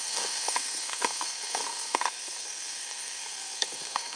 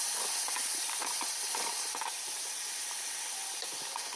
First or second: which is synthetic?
first